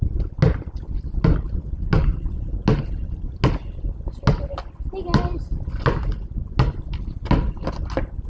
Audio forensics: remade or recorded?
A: recorded